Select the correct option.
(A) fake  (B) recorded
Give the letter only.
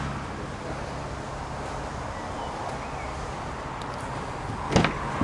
B